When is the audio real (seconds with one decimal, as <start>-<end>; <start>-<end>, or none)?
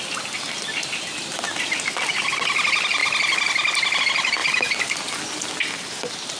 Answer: 0.0-6.4